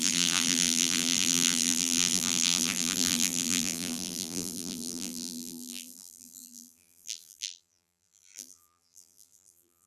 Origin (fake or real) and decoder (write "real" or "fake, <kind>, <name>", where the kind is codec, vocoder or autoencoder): fake, vocoder, BigVGAN v2